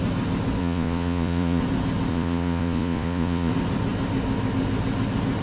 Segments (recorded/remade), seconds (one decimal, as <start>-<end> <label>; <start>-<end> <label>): 0.0-0.6 recorded; 0.6-1.6 remade; 1.6-2.1 recorded; 2.1-3.5 remade; 3.5-5.4 recorded